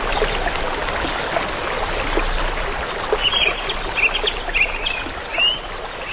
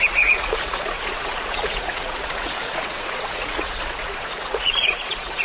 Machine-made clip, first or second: second